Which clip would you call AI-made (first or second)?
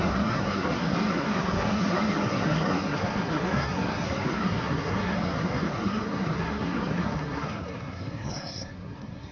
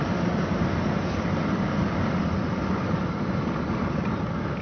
first